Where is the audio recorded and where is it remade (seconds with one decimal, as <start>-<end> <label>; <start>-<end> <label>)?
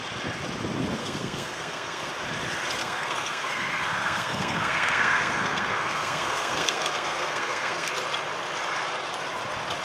0.0-1.0 recorded; 1.0-2.1 remade; 2.1-2.8 recorded; 2.8-7.9 remade; 7.9-9.8 recorded